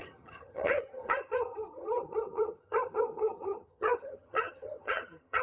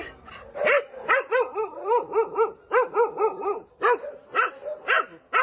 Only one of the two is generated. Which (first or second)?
first